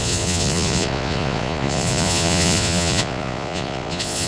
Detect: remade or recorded remade